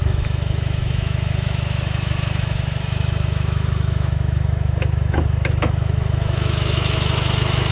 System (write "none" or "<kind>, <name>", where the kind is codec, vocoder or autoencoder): autoencoder, DAC-VAE